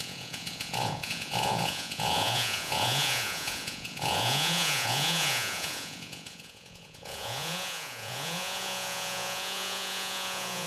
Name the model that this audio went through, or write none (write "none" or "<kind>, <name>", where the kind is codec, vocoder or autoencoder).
vocoder, Vocos